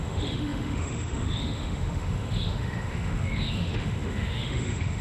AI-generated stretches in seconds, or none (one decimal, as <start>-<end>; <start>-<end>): 0.0-5.0